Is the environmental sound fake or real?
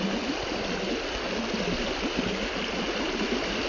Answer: real